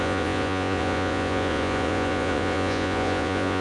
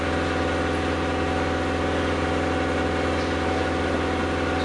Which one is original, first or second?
second